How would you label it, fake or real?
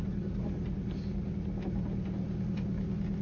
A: real